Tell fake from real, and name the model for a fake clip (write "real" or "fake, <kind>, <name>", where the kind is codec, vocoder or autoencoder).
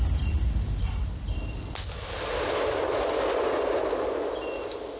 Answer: real